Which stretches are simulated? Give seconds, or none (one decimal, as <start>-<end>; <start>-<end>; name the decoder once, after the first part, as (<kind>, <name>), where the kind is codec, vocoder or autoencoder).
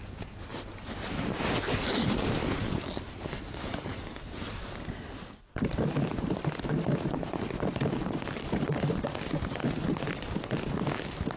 2.6-5.7 (vocoder, BigVGAN v2)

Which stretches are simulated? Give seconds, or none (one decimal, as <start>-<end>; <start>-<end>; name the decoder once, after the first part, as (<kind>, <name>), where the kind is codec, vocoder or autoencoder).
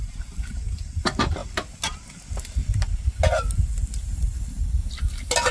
none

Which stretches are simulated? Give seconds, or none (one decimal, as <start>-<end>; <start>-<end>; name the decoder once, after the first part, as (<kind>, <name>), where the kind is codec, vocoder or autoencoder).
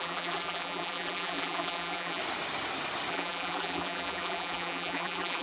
0.0-2.2 (vocoder, BigVGAN v2); 3.1-5.4